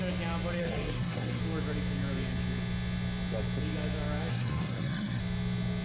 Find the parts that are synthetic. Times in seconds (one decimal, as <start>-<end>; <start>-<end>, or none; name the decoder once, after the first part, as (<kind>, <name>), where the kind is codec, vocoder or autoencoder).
0.6-1.4 (codec, SNAC); 4.3-5.2